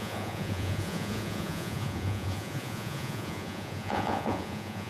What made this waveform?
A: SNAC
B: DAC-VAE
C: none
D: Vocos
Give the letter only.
D